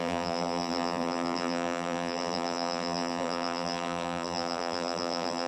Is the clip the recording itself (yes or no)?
no